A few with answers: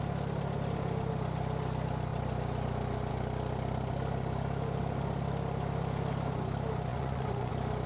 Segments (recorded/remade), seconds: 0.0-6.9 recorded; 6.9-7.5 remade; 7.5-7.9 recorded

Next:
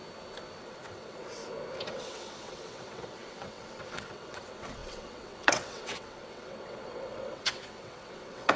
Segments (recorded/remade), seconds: 0.0-0.6 recorded; 0.6-1.4 remade; 1.4-1.9 recorded; 1.9-8.6 remade